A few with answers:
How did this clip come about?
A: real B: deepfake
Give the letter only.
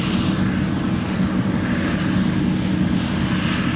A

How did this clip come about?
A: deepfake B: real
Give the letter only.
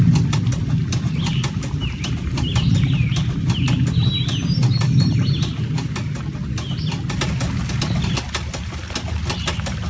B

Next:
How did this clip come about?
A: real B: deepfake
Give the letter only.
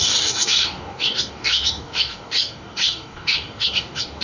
B